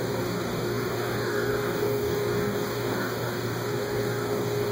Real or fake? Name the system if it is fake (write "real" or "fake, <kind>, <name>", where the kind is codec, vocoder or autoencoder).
fake, codec, DAC